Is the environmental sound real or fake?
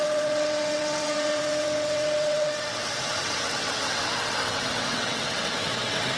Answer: fake